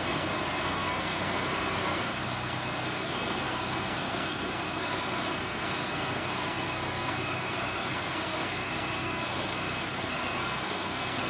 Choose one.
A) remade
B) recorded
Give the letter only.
A